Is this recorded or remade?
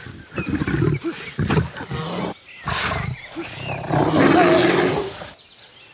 recorded